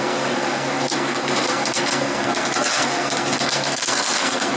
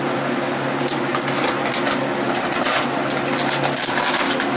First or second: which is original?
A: second